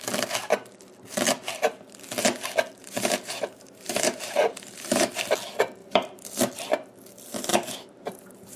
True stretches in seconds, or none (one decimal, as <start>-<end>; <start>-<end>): 0.0-2.8; 5.1-5.8; 6.4-7.5